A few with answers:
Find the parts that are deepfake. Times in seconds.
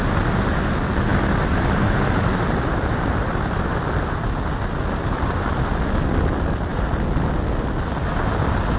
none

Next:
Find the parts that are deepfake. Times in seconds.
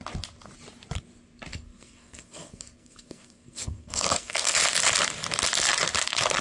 1.5-4.6